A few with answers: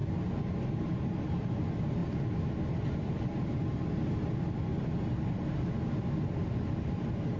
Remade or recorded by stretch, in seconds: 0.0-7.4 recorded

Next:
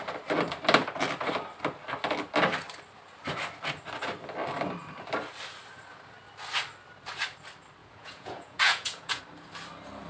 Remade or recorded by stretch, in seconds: 0.0-7.8 recorded; 7.8-9.2 remade; 9.2-10.1 recorded

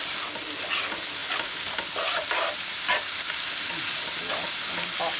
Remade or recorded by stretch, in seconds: 0.0-5.2 recorded

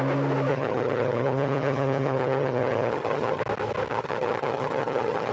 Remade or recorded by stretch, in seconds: 0.0-0.5 recorded; 0.5-3.4 remade; 3.4-3.9 recorded; 3.9-5.3 remade

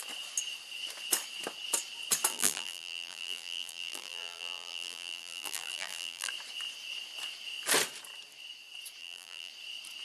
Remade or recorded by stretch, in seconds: 0.0-2.3 recorded; 2.3-6.3 remade; 6.3-9.0 recorded; 9.0-9.5 remade; 9.5-10.0 recorded

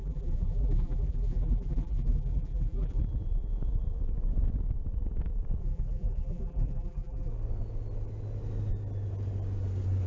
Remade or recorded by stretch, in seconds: 0.0-3.0 remade; 3.0-5.6 recorded; 5.6-7.3 remade; 7.3-10.1 recorded

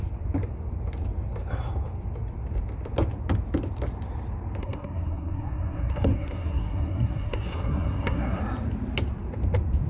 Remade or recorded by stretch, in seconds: 0.0-4.6 recorded; 4.6-8.4 remade; 8.4-9.9 recorded

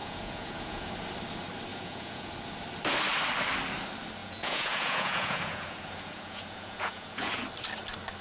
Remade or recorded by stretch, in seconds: 0.0-0.9 remade; 0.9-1.7 recorded; 1.7-2.3 remade; 2.3-4.2 recorded; 4.2-7.4 remade; 7.4-8.2 recorded